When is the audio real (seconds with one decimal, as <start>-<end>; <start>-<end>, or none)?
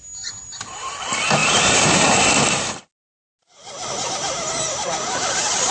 0.0-0.4; 0.9-1.4; 2.2-5.7